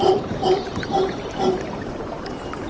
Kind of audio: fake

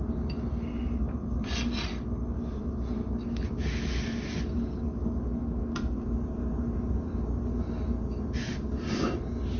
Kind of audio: real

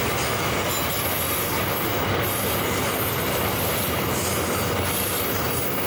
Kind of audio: real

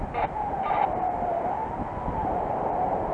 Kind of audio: real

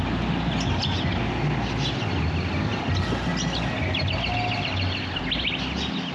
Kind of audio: real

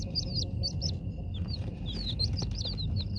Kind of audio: real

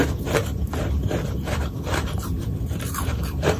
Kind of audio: fake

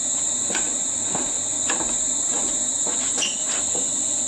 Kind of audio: fake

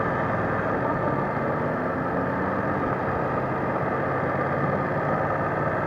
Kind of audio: real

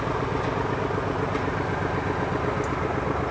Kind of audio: real